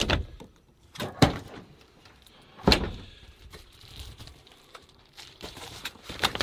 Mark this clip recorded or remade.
remade